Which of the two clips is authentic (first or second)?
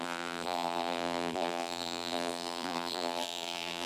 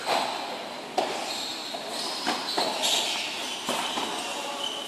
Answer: second